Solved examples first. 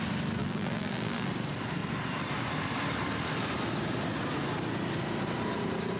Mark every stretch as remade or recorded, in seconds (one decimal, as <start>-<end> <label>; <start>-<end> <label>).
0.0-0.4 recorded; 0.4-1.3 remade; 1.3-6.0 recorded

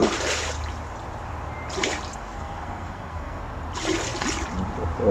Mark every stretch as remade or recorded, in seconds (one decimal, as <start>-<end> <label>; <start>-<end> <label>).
0.0-2.1 recorded; 2.1-3.4 remade; 3.4-5.1 recorded

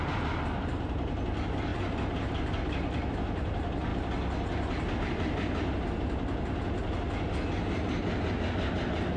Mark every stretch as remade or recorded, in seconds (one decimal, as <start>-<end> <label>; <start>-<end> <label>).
0.0-9.2 recorded